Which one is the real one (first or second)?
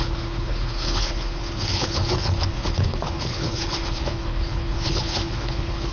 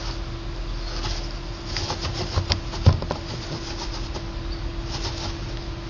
second